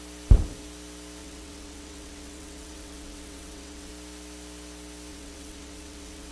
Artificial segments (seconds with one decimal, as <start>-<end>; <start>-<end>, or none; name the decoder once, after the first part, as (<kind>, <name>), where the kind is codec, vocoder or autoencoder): 1.2-3.9 (vocoder, WaveNeXt); 5.1-6.3